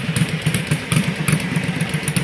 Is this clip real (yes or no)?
no